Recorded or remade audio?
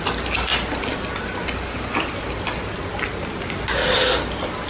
recorded